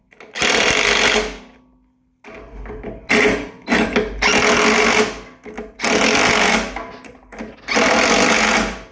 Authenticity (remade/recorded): recorded